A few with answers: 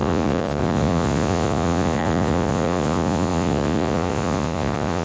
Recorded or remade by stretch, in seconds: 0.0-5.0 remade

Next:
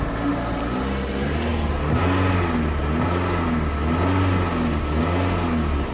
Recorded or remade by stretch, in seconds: 0.0-5.9 recorded

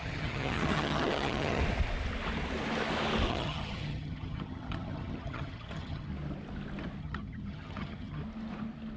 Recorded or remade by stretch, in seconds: 0.0-1.6 remade; 1.6-3.3 recorded; 3.3-6.1 remade; 6.1-7.0 recorded; 7.0-8.2 remade; 8.2-9.0 recorded

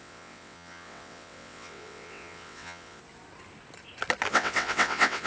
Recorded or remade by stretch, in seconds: 0.0-3.0 remade; 3.0-4.3 recorded; 4.3-5.3 remade

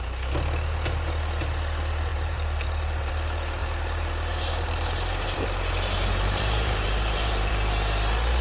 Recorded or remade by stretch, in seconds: 0.0-2.1 recorded; 2.1-3.1 remade; 3.1-3.6 recorded; 3.6-7.5 remade; 7.5-8.4 recorded

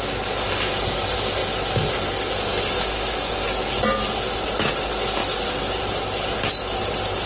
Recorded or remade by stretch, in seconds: 0.0-7.3 recorded

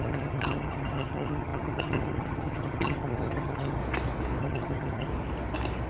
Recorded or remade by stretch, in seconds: 0.0-3.8 remade; 3.8-4.4 recorded; 4.4-5.1 remade; 5.1-5.9 recorded